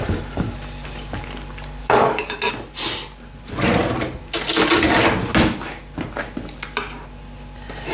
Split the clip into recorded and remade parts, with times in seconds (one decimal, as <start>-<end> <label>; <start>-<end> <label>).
0.0-1.8 recorded; 1.8-2.5 remade; 2.5-7.9 recorded

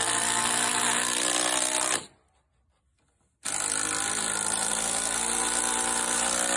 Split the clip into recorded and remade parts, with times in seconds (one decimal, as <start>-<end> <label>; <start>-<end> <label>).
0.0-6.6 recorded

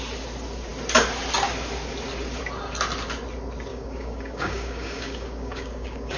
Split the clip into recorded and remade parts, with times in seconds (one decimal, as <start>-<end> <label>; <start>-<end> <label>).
0.0-3.7 recorded; 3.7-6.2 remade

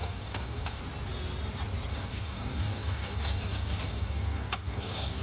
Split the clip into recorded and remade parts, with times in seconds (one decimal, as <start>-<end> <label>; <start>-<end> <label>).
0.0-0.8 remade; 0.8-1.9 recorded; 1.9-5.2 remade